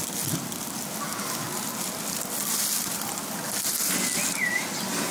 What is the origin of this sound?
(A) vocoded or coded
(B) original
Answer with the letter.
B